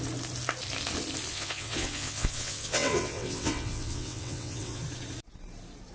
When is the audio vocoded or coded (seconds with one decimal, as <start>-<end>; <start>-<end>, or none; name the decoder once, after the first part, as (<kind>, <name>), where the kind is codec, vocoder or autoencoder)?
1.3-4.8 (vocoder, WaveNeXt)